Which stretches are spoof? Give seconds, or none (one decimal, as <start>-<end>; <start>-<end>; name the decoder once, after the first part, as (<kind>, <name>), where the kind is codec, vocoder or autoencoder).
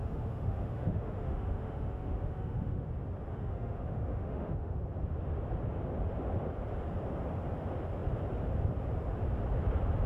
0.0-2.9 (autoencoder, DAC-VAE); 3.3-4.8